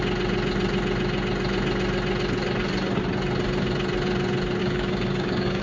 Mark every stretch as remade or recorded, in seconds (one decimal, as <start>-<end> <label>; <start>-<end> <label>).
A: 0.0-4.6 recorded; 4.6-5.6 remade